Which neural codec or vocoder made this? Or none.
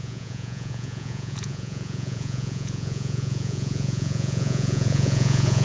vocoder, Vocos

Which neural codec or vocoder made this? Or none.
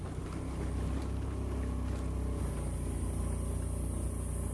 none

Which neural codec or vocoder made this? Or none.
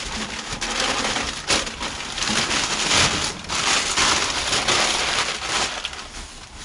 none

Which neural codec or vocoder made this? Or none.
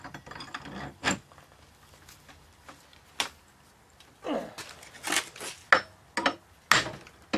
none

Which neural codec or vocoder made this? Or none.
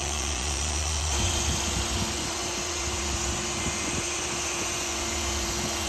vocoder, Vocos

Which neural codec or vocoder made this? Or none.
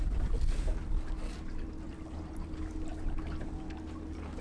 none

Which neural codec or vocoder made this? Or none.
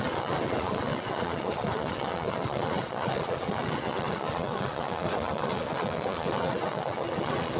vocoder, Vocos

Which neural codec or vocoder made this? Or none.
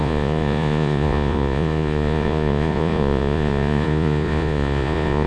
vocoder, Vocos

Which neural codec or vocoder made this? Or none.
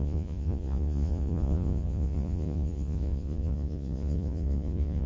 vocoder, Vocos